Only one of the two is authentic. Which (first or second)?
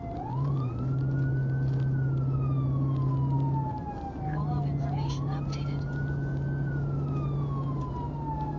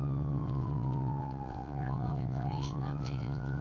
first